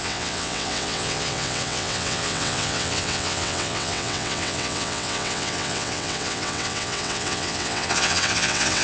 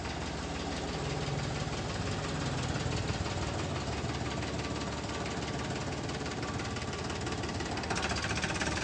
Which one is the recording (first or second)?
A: second